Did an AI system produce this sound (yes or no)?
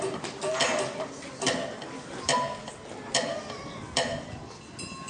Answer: no